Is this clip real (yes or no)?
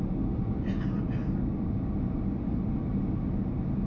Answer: yes